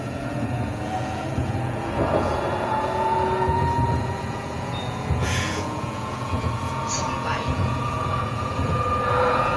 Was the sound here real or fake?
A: fake